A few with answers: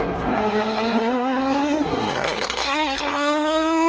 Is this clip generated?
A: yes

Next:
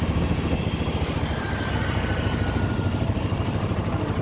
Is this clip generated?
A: no